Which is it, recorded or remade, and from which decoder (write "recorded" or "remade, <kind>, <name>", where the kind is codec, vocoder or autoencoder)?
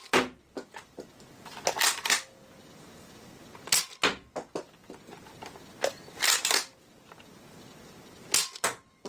recorded